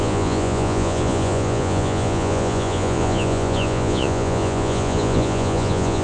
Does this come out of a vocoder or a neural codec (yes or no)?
yes